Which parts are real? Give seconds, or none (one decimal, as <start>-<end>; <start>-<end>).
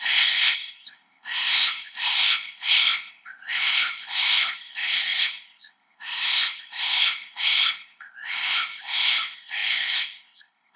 none